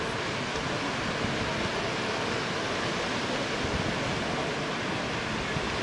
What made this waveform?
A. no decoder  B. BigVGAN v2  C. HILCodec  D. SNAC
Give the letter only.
A